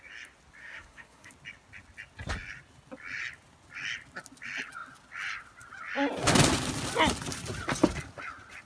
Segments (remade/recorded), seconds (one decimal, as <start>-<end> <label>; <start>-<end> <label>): 0.0-0.6 recorded; 0.6-1.3 remade; 1.3-8.7 recorded

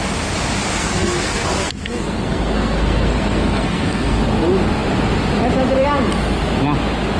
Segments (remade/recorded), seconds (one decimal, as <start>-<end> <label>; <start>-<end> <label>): 0.0-0.7 recorded; 0.7-4.2 remade; 4.2-7.2 recorded